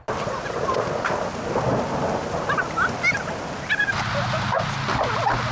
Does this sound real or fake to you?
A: real